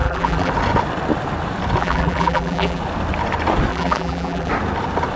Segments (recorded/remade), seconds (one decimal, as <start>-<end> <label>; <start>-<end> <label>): 0.0-0.5 remade; 0.5-1.8 recorded; 1.8-2.8 remade; 2.8-3.7 recorded; 3.7-4.5 remade; 4.5-5.2 recorded